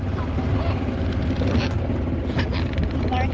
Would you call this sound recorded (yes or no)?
yes